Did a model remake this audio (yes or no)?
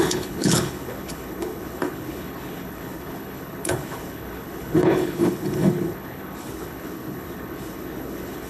yes